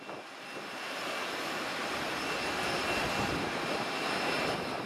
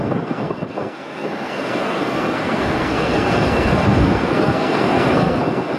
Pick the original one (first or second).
first